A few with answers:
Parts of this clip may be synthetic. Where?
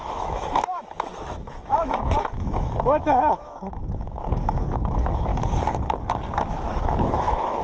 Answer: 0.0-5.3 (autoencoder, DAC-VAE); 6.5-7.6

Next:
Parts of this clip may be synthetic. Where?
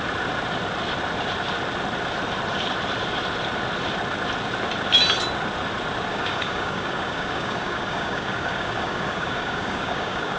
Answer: 6.1-10.4 (codec, DAC)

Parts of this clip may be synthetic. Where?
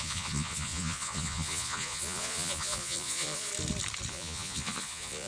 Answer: 0.0-3.5 (vocoder, Vocos); 4.1-5.3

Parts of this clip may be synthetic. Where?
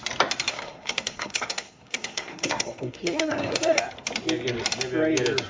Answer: 0.5-3.8 (codec, SNAC)